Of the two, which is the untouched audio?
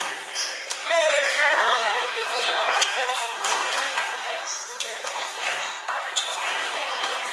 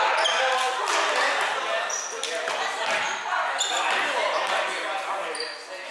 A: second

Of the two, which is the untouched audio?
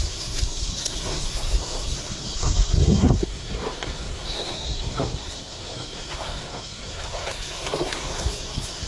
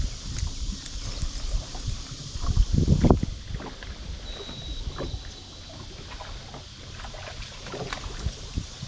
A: second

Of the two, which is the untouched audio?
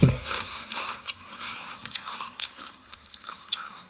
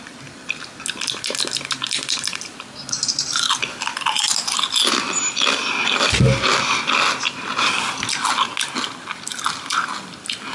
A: second